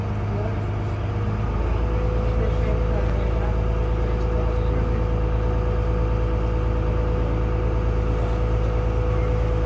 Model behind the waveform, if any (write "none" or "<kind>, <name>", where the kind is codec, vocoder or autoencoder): none